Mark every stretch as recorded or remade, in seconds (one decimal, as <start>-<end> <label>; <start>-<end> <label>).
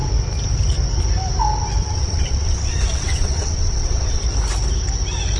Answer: 0.0-1.8 recorded; 1.8-4.2 remade; 4.2-5.4 recorded